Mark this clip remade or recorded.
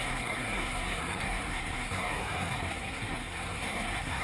remade